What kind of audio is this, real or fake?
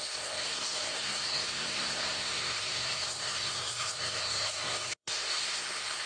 fake